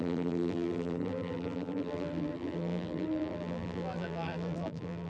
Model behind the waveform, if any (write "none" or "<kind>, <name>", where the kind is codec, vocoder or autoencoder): vocoder, BigVGAN v2